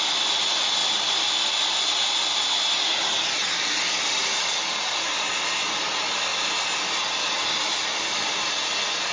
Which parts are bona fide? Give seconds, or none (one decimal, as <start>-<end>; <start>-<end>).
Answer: 0.0-9.1